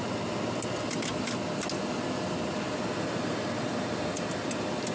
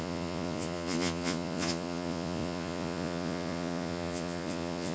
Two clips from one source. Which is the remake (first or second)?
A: second